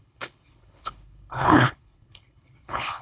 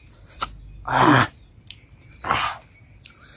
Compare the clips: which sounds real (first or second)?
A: second